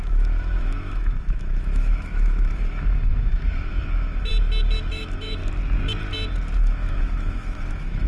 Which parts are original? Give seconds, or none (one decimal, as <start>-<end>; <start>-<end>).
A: 4.3-4.9; 5.4-6.6